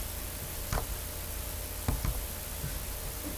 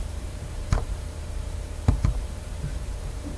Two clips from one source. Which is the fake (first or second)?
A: second